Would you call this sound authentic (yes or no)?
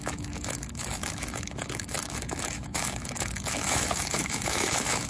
no